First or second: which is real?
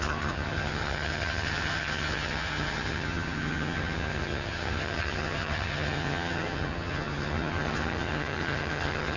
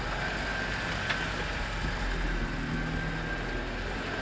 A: second